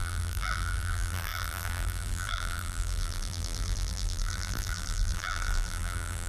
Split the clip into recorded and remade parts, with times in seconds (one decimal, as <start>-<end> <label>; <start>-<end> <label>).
0.0-6.3 remade